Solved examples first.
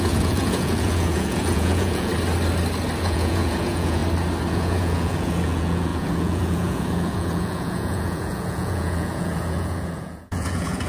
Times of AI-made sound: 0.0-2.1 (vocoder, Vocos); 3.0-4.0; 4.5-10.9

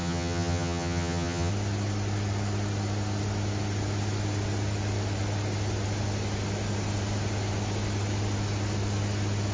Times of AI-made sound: 0.0-1.5 (vocoder, HiFi-GAN)

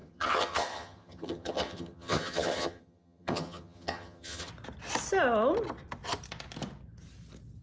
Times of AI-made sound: 0.0-4.5 (vocoder, HiFi-GAN)

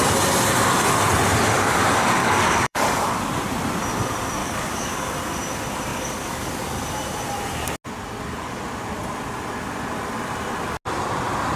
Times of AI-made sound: 2.2-3.2 (codec, DAC); 4.4-5.1; 5.9-6.5

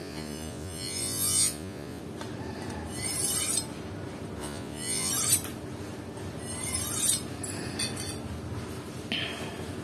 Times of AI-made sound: 0.0-2.0 (vocoder, Vocos); 4.4-5.1

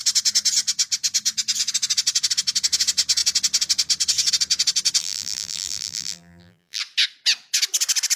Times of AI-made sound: 5.0-6.8 (vocoder, BigVGAN v2)